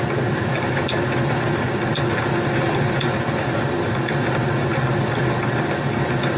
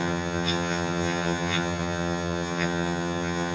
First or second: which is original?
first